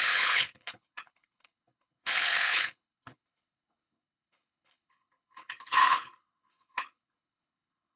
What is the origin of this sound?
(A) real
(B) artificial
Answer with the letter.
B